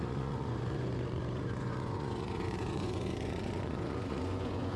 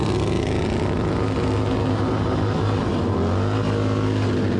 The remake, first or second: first